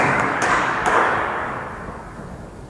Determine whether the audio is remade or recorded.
remade